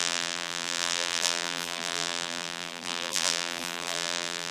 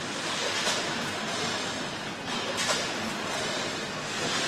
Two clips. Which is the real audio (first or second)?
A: second